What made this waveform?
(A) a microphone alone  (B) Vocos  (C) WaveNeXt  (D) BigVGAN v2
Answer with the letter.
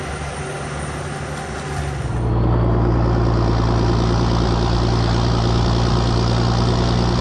A